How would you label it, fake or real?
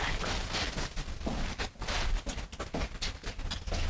real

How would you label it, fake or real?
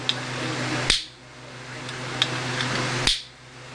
real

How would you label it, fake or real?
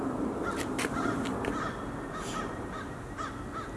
real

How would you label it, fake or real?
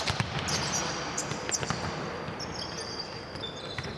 real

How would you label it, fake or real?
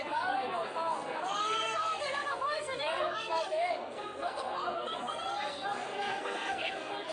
fake